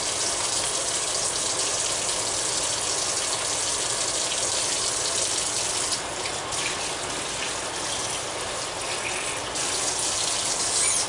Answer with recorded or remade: recorded